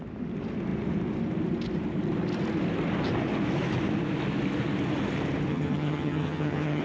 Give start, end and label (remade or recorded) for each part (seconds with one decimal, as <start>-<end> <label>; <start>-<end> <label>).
0.0-5.5 recorded; 5.5-6.8 remade